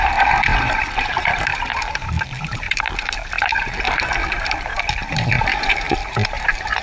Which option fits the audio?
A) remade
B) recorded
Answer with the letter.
A